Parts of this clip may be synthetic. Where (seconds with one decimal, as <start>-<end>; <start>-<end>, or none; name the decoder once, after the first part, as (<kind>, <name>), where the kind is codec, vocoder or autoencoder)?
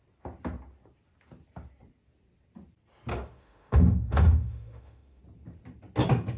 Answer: 3.1-5.2 (autoencoder, DAC-VAE)